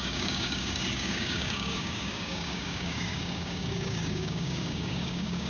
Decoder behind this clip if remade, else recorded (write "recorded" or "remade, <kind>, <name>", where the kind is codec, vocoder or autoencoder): remade, codec, DAC